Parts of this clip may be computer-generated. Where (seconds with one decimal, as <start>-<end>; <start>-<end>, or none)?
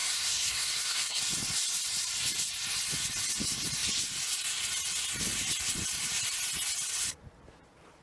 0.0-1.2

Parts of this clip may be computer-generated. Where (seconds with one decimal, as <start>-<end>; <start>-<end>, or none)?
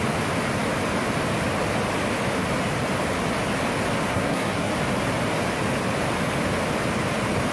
4.1-4.7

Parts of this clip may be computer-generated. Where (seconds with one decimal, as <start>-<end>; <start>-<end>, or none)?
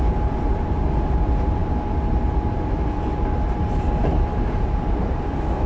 none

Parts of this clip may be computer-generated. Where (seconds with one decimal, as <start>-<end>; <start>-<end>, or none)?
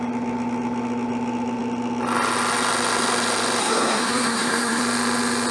3.6-4.8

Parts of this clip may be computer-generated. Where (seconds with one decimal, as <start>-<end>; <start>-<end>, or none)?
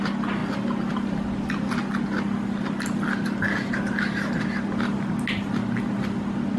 none